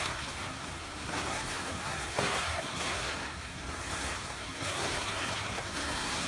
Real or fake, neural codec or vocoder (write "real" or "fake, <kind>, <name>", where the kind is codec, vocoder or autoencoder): fake, codec, SNAC